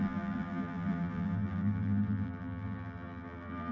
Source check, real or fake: fake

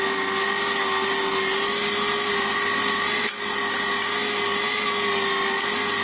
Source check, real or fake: real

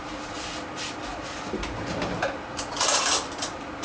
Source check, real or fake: fake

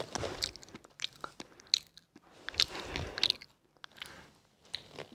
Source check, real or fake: real